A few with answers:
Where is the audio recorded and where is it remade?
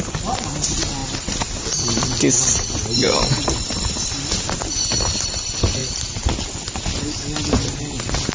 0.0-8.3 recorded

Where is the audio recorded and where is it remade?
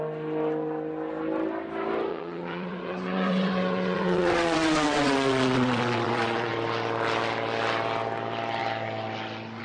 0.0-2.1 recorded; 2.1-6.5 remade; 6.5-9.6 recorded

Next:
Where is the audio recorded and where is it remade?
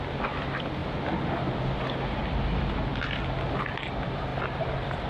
0.0-5.1 recorded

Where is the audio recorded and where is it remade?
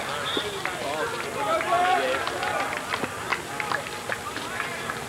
0.0-5.1 recorded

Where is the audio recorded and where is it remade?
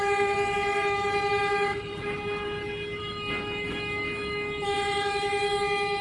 0.0-1.9 remade; 1.9-3.0 recorded; 3.0-6.0 remade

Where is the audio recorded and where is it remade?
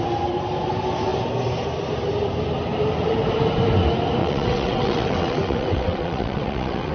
0.0-4.2 recorded; 4.2-6.9 remade